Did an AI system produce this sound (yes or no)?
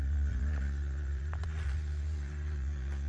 yes